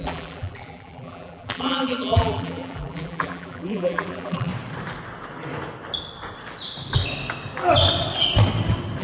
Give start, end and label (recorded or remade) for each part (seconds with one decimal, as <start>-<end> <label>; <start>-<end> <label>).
0.0-4.5 remade; 4.5-9.0 recorded